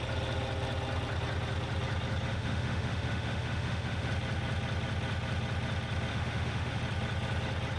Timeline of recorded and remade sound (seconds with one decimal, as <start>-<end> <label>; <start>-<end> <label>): 0.0-2.3 recorded; 2.3-4.1 remade; 4.1-6.1 recorded; 6.1-6.8 remade; 6.8-7.8 recorded